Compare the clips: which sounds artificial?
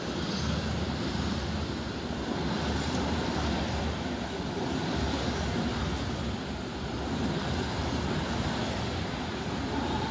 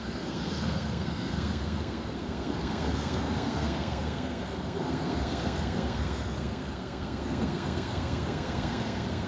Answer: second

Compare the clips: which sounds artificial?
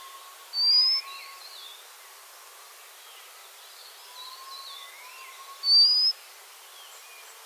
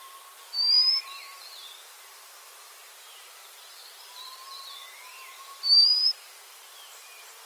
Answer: second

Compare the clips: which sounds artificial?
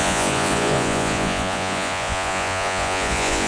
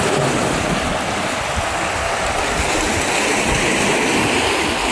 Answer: first